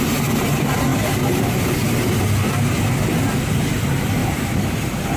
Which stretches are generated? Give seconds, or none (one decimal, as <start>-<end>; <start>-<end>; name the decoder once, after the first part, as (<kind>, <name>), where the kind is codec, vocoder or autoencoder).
none